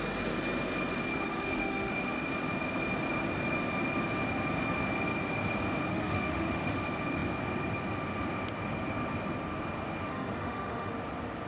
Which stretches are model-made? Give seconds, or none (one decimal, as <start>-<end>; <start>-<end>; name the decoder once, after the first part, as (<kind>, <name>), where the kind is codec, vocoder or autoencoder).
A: 1.1-2.3 (autoencoder, DAC-VAE); 5.9-6.8; 10.1-10.9